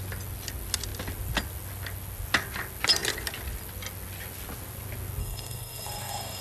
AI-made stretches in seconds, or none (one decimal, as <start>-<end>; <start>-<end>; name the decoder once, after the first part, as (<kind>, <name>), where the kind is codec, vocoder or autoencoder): 5.2-6.4 (codec, SNAC)